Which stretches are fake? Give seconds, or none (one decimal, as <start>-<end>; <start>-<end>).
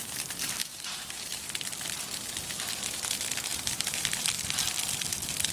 0.6-1.5; 3.5-4.3